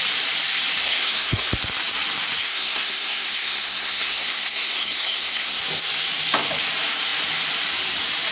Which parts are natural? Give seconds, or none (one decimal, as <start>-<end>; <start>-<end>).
0.0-0.8; 1.5-2.4; 5.6-8.3